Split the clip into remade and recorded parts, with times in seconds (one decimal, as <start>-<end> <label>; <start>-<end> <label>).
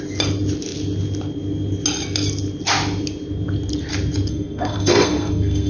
0.0-4.3 recorded; 4.3-5.7 remade